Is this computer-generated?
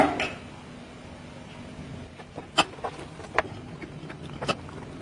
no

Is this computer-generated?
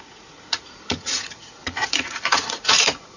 yes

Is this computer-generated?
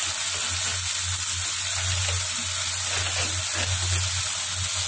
no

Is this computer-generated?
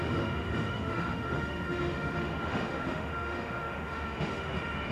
yes